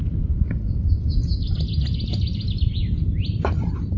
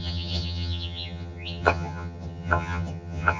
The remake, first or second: second